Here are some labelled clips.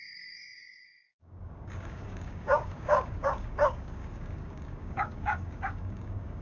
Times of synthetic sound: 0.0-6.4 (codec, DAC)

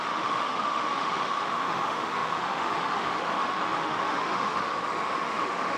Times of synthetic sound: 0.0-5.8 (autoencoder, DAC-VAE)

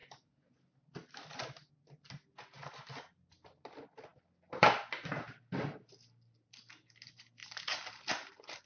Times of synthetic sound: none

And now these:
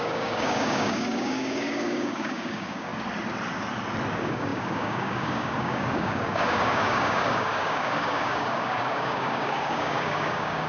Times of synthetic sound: 0.0-2.9 (codec, DAC); 4.1-10.7